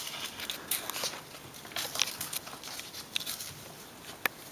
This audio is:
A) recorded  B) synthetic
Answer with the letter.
A